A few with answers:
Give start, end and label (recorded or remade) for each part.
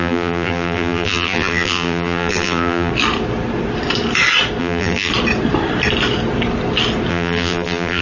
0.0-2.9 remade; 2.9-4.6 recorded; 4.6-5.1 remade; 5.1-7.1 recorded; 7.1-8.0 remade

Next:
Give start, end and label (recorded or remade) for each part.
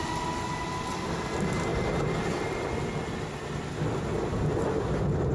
0.0-5.3 recorded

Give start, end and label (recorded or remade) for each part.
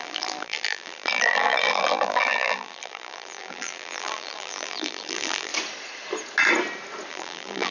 0.0-5.5 remade; 5.5-7.1 recorded; 7.1-7.7 remade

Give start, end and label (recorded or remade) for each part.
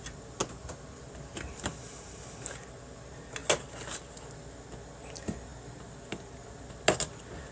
0.0-7.5 recorded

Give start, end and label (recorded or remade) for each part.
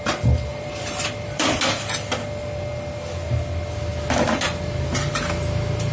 0.0-0.5 recorded; 0.5-1.6 remade; 1.6-5.9 recorded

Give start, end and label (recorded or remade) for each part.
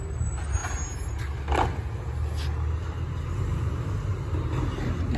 0.0-5.2 recorded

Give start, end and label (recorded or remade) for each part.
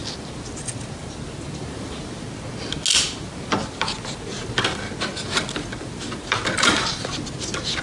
0.0-7.8 recorded